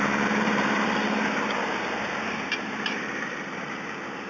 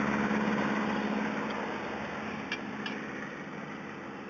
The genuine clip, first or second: second